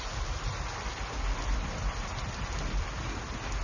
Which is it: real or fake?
real